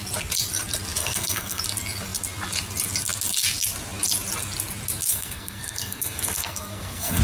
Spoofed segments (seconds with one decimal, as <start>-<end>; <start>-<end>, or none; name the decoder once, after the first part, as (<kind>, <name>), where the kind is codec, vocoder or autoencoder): 1.0-1.6 (codec, SNAC); 5.1-7.2